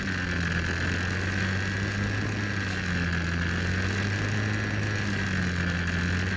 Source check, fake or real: real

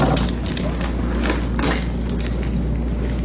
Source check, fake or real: real